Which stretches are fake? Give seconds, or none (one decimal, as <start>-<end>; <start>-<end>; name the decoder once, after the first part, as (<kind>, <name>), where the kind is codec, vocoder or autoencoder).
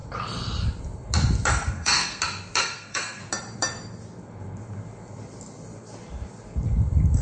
1.5-2.2 (codec, SNAC); 2.6-3.2